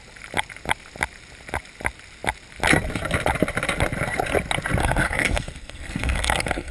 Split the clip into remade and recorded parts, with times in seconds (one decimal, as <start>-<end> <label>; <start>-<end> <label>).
0.0-4.8 recorded; 4.8-6.7 remade